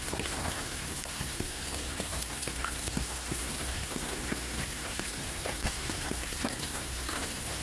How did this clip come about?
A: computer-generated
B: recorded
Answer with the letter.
A